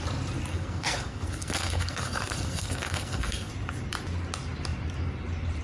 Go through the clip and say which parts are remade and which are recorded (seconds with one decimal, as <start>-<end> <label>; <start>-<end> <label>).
0.0-0.5 recorded; 0.5-3.5 remade; 3.5-5.6 recorded